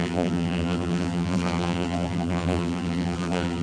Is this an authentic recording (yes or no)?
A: no